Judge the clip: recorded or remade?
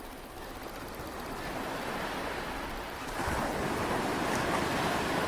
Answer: remade